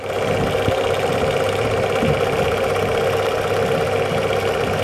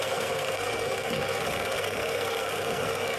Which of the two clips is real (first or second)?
first